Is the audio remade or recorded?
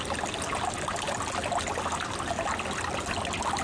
recorded